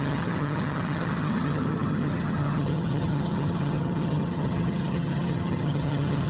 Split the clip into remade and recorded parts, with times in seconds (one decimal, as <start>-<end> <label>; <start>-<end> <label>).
0.0-6.3 remade